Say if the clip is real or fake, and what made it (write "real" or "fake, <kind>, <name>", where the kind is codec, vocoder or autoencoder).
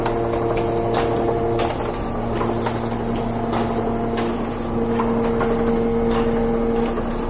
real